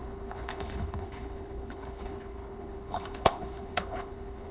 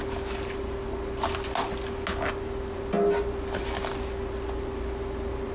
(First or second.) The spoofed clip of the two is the first